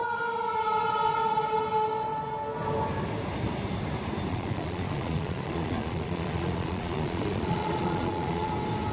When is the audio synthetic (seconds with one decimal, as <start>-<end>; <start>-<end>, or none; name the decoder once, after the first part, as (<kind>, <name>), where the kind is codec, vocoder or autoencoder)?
4.3-8.5 (vocoder, Vocos)